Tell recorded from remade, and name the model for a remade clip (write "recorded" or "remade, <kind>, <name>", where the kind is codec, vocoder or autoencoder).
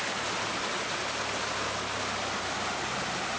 recorded